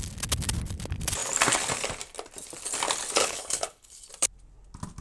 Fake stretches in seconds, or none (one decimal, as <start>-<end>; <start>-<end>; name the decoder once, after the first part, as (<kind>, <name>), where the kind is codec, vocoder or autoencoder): 3.2-4.1 (codec, HILCodec)